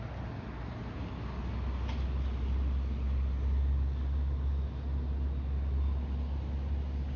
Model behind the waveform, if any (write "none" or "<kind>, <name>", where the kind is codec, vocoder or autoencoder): none